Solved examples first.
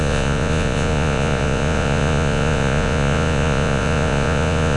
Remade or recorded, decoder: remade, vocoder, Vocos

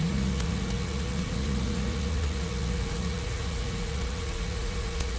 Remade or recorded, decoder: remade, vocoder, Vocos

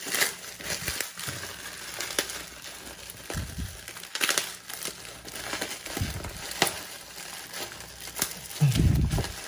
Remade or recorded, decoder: recorded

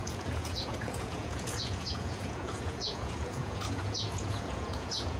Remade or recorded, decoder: remade, vocoder, Vocos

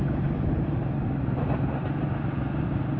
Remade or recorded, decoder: recorded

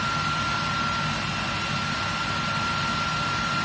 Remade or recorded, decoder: recorded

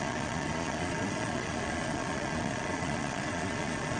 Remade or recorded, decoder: remade, vocoder, Vocos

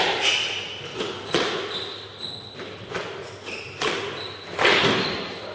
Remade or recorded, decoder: recorded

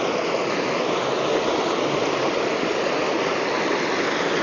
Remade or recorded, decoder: recorded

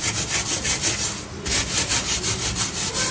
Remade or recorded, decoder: recorded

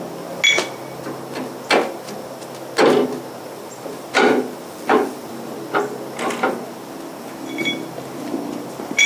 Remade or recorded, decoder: recorded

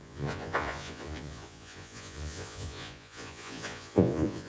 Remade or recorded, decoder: remade, vocoder, Vocos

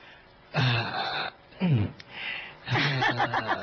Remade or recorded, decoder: remade, vocoder, Vocos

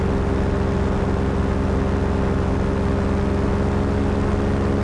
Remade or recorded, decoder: recorded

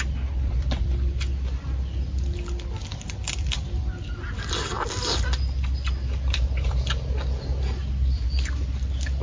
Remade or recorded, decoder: recorded